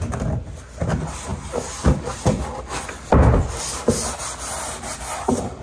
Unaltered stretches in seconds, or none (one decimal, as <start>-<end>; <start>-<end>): 0.0-5.6